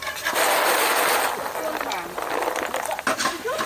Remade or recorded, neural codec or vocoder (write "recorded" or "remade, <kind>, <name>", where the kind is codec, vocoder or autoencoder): recorded